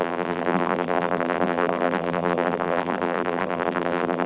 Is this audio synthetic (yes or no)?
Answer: yes